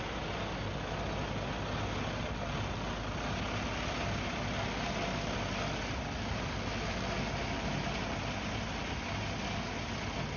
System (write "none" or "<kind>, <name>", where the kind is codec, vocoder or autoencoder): none